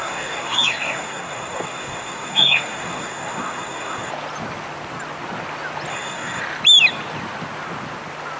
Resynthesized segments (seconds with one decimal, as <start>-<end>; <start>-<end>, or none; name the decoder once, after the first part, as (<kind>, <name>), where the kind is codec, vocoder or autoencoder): 0.0-4.1 (codec, SNAC); 5.9-6.4